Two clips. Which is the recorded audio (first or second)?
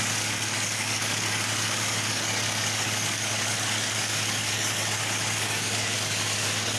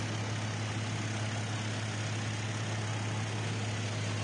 second